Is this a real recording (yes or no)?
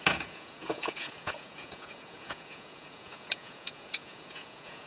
no